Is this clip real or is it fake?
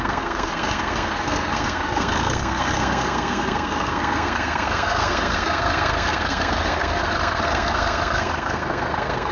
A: fake